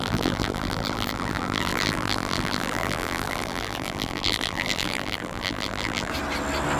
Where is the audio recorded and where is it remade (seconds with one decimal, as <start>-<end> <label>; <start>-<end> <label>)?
0.0-6.1 remade; 6.1-6.8 recorded